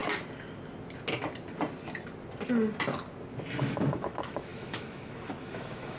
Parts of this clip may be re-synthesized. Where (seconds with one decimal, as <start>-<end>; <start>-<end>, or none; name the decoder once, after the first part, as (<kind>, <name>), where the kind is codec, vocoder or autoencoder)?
3.6-6.0 (autoencoder, DAC-VAE)